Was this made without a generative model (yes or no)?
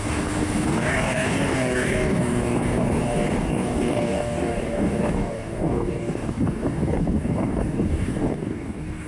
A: no